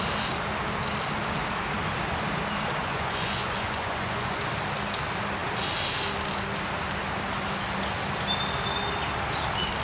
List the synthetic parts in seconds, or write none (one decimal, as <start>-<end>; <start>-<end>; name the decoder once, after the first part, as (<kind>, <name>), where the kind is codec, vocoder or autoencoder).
2.8-4.4 (vocoder, Vocos)